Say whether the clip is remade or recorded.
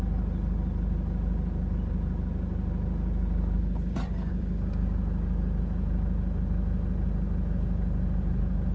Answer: remade